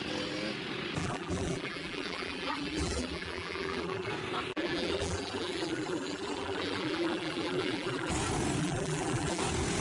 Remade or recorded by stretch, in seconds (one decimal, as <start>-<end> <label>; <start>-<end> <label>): 0.0-1.0 recorded; 1.0-4.1 remade; 4.1-4.5 recorded; 4.5-8.1 remade; 8.1-8.6 recorded; 8.6-9.4 remade; 9.4-9.8 recorded